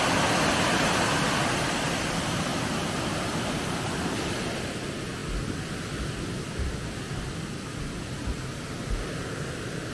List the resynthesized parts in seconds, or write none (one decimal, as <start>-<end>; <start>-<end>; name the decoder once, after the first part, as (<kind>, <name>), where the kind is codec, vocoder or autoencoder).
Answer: 2.5-4.4 (vocoder, BigVGAN v2)